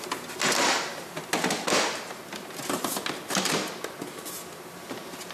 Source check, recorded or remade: recorded